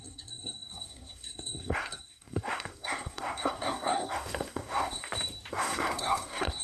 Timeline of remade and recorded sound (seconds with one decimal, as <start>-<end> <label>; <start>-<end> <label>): 0.0-5.0 remade; 5.0-5.5 recorded; 5.5-6.6 remade